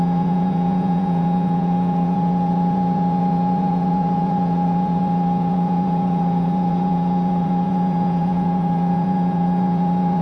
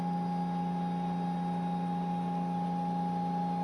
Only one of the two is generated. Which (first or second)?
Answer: first